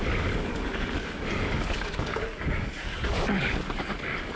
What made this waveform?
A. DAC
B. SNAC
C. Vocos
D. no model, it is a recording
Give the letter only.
A